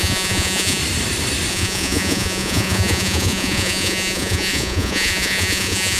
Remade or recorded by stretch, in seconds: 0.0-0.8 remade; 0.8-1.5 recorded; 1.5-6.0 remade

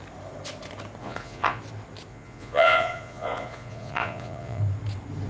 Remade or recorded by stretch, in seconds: 0.0-1.0 recorded; 1.0-1.6 remade; 1.6-2.1 recorded; 2.1-4.6 remade; 4.6-5.3 recorded

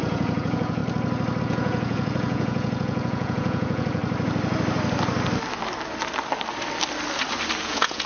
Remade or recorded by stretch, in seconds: 0.0-0.8 remade; 0.8-1.4 recorded; 1.4-4.0 remade; 4.0-7.6 recorded; 7.6-8.1 remade